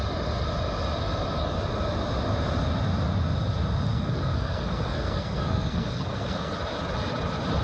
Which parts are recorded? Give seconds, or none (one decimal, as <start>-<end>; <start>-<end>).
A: 0.0-3.9; 6.5-7.6